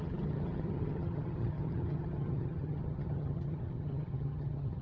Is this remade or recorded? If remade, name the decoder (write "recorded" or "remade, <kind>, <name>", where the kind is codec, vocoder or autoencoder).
remade, vocoder, HiFi-GAN